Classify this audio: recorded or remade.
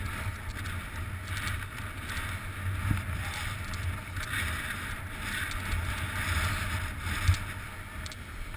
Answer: recorded